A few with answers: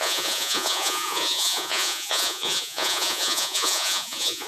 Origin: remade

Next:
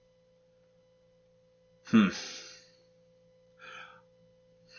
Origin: recorded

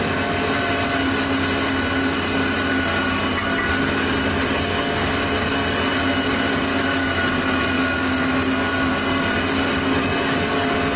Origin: recorded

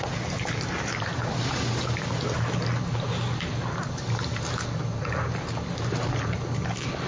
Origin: recorded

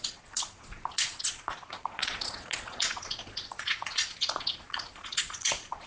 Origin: remade